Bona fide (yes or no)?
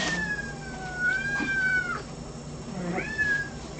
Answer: no